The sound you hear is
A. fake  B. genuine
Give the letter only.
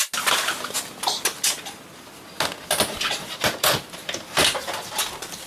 B